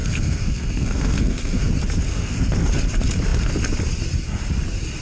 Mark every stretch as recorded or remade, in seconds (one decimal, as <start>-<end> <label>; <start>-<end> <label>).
0.0-1.7 remade; 1.7-2.1 recorded; 2.1-2.7 remade; 2.7-5.0 recorded